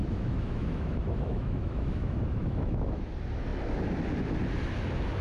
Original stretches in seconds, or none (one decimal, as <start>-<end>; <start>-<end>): 3.1-5.2